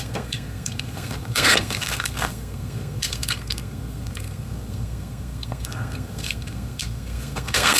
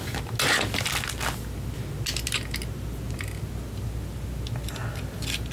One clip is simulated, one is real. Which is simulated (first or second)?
first